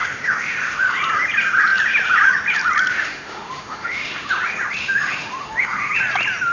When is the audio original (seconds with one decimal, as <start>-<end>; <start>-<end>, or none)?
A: 0.9-2.9; 4.3-4.8; 5.9-6.5